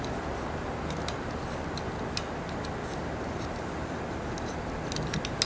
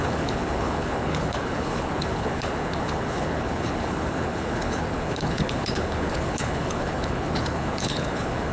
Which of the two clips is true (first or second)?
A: first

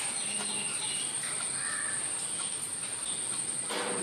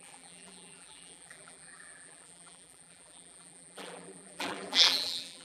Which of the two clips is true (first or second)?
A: first